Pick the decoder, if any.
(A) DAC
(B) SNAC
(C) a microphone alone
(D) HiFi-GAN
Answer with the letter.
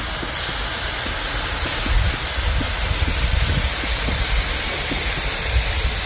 C